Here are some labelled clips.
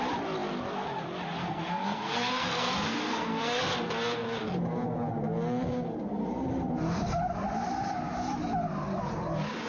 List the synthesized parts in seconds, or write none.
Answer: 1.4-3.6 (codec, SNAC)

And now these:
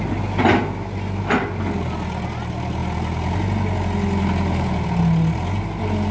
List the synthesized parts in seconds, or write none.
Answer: none

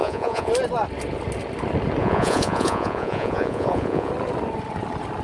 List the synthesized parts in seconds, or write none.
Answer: 0.0-0.5 (vocoder, Vocos); 2.0-4.1

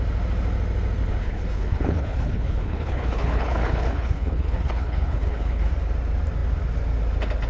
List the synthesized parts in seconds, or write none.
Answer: 1.2-5.7 (codec, HILCodec)

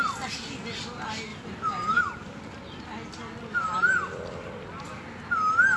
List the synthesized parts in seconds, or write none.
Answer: 1.3-2.0 (vocoder, BigVGAN v2)